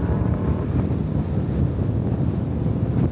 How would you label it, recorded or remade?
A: recorded